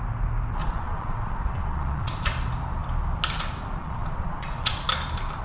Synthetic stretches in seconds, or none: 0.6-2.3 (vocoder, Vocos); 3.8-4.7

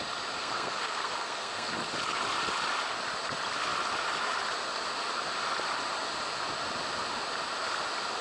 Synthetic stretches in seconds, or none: 0.4-1.7 (codec, SNAC)